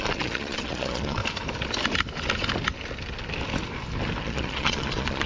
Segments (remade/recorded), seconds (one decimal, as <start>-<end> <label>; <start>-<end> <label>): 0.0-1.2 remade; 1.2-4.2 recorded; 4.2-5.3 remade